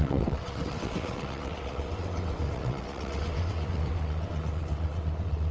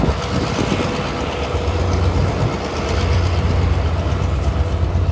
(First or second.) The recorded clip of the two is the second